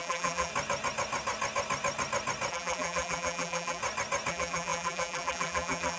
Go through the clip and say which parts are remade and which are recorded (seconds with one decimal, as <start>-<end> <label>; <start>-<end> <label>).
0.0-0.5 remade; 0.5-2.5 recorded; 2.5-3.8 remade; 3.8-4.3 recorded; 4.3-6.0 remade